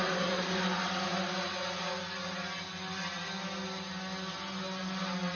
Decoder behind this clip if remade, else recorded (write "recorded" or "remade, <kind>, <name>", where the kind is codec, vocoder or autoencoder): recorded